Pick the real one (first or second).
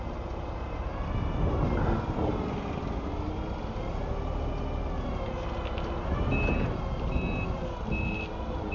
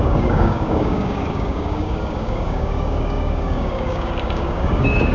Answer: first